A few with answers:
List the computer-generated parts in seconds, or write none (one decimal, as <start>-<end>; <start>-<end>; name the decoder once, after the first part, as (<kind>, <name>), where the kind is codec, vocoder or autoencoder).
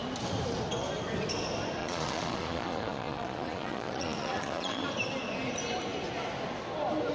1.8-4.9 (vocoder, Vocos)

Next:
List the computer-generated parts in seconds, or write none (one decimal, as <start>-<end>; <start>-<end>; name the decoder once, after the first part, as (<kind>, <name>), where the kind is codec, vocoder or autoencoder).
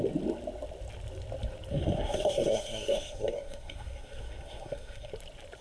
1.7-5.1 (codec, SNAC)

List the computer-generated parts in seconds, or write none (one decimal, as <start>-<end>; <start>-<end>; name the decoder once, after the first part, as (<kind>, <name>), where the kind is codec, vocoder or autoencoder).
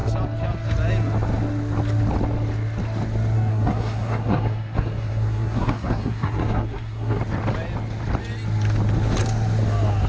3.5-7.2 (codec, SNAC)